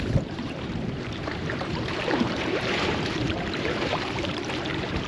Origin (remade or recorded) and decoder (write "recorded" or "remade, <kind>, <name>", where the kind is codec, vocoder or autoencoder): remade, vocoder, BigVGAN v2